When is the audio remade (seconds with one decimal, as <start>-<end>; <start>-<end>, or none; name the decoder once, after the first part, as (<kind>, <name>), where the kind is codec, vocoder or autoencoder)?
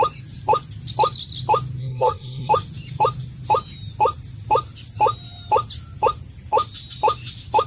1.8-2.5 (codec, SNAC)